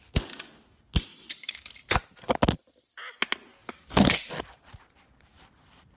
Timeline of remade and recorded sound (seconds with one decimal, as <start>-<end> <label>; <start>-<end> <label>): 0.0-1.1 recorded; 1.1-1.7 remade; 1.7-3.5 recorded; 3.5-4.3 remade; 4.3-6.0 recorded